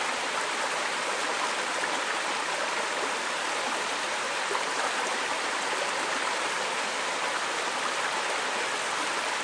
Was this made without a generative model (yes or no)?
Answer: yes